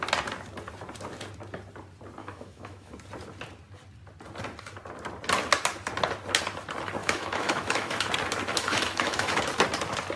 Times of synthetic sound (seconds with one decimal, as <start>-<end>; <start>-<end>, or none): 2.2-2.9; 7.0-8.1; 8.5-9.4